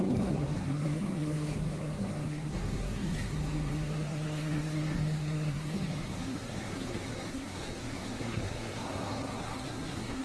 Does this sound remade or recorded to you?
remade